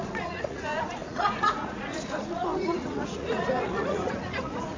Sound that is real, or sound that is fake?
fake